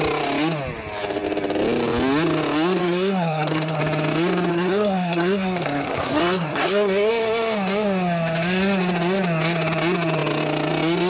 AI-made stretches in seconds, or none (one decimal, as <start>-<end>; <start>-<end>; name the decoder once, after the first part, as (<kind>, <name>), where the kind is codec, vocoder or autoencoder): 2.8-3.8 (codec, SNAC); 4.5-7.1